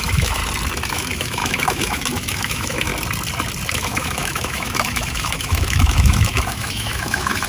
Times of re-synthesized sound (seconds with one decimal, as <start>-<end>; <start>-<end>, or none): 0.0-0.4; 0.9-2.9; 3.7-7.5